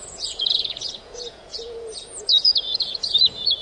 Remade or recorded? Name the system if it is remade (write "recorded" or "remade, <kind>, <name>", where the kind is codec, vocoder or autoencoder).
remade, vocoder, Vocos